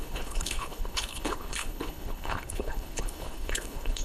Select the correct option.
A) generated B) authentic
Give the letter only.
A